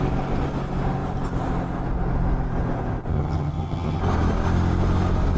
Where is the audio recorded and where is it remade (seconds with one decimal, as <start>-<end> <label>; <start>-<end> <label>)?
0.0-3.1 recorded; 3.1-4.0 remade; 4.0-5.4 recorded